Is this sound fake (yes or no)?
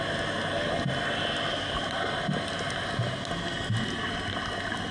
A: no